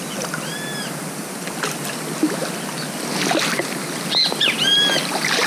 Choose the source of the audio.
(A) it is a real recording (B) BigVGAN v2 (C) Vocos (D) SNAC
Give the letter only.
A